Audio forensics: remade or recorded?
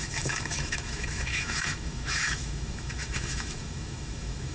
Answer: remade